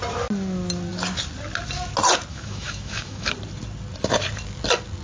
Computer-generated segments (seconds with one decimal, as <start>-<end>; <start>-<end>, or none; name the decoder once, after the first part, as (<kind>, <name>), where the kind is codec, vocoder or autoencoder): 2.3-3.3 (autoencoder, DAC-VAE)

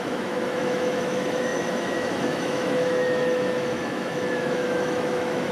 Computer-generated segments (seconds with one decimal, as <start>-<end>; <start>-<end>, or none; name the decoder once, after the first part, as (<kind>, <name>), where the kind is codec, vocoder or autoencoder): 0.0-5.5 (autoencoder, DAC-VAE)

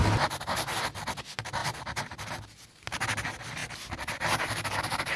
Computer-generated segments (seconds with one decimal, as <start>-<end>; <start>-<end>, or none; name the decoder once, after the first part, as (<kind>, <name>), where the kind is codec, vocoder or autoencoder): 0.0-1.0 (vocoder, BigVGAN v2); 1.6-2.3; 3.6-5.2

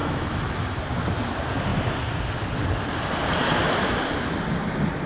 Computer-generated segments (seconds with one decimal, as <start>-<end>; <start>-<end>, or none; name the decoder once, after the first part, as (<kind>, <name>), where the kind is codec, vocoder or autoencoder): 0.0-0.8 (autoencoder, DAC-VAE)

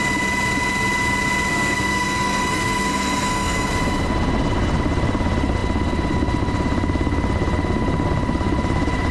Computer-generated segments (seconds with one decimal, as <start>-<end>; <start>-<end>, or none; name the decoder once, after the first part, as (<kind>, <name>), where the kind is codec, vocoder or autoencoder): 1.5-3.7 (codec, SNAC)

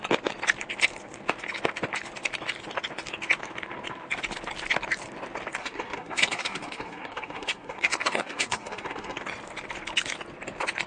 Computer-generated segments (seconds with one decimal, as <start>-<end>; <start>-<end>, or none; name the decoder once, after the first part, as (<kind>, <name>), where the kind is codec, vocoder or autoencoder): 5.6-9.2 (codec, SNAC)